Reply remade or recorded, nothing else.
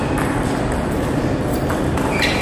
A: recorded